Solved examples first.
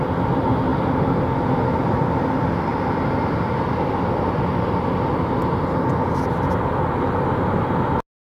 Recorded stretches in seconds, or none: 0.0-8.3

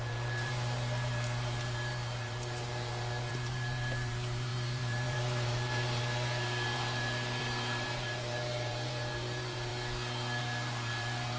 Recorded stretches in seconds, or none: 9.7-10.4